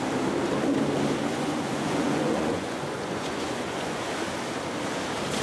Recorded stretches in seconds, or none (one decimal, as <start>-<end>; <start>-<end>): 0.0-1.3; 4.1-5.4